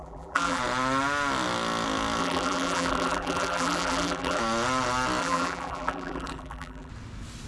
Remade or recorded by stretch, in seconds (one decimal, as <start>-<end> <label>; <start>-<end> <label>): 0.0-0.6 remade; 0.6-2.2 recorded; 2.2-4.4 remade; 4.4-5.2 recorded; 5.2-6.9 remade; 6.9-7.5 recorded